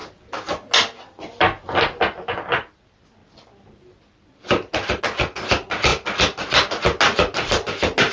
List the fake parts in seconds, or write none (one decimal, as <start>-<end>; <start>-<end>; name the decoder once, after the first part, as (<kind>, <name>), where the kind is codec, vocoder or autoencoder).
none